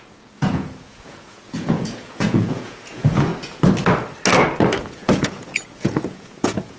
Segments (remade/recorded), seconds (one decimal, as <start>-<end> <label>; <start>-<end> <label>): 0.0-3.3 remade; 3.3-4.8 recorded; 4.8-6.8 remade